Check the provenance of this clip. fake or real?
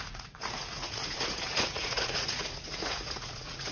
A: fake